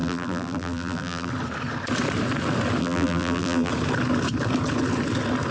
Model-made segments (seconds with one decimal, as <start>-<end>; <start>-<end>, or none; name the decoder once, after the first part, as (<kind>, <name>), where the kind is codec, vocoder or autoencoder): 0.0-1.3 (vocoder, BigVGAN v2); 2.8-3.7